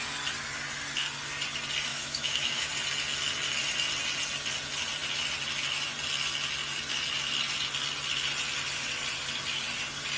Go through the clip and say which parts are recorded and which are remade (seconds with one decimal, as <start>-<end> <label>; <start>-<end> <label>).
0.0-1.9 recorded; 1.9-2.7 remade; 2.7-10.2 recorded